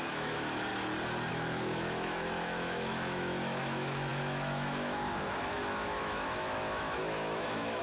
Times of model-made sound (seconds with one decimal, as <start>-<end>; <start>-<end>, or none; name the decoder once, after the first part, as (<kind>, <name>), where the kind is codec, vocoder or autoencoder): 0.0-0.7 (autoencoder, DAC-VAE); 1.3-7.8